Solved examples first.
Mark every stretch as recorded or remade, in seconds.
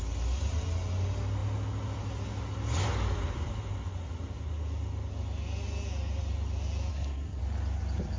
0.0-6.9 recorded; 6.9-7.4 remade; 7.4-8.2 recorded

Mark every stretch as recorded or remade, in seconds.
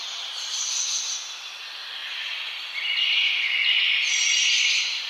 0.0-2.0 recorded; 2.0-3.8 remade; 3.8-5.1 recorded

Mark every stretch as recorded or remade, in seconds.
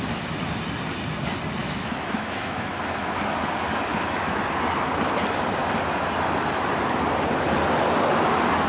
0.0-1.6 recorded; 1.6-2.7 remade; 2.7-3.9 recorded; 3.9-4.4 remade; 4.4-8.7 recorded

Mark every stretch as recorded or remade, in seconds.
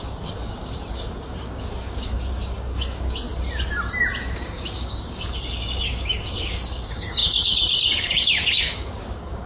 0.0-3.3 remade; 3.3-4.2 recorded; 4.2-9.5 remade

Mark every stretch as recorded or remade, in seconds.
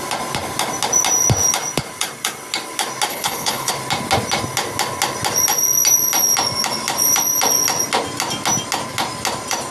0.0-3.1 recorded; 3.1-3.7 remade; 3.7-9.7 recorded